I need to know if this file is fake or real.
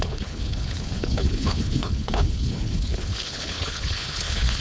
fake